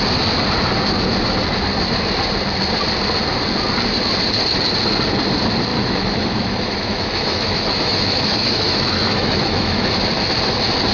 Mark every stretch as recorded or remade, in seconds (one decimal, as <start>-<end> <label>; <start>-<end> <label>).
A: 0.0-5.7 recorded; 5.7-9.9 remade; 9.9-10.9 recorded